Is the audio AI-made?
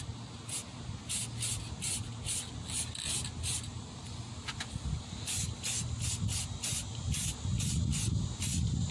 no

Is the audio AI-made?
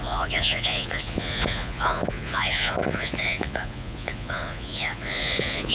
yes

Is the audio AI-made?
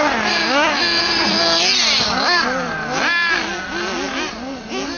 no